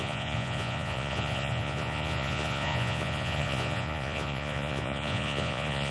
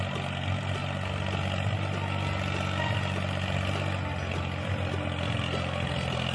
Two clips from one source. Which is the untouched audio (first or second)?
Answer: second